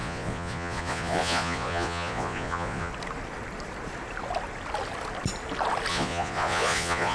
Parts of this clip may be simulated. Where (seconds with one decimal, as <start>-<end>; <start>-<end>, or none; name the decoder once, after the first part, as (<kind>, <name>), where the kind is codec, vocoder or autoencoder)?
0.0-2.9 (vocoder, Vocos); 5.9-7.1